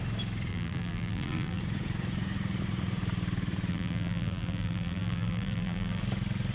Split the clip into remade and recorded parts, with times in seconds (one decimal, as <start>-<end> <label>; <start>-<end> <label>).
0.0-0.5 recorded; 0.5-1.6 remade; 1.6-3.7 recorded; 3.7-6.0 remade; 6.0-6.5 recorded